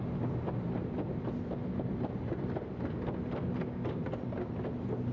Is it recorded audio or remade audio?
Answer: recorded